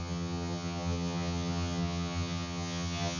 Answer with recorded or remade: remade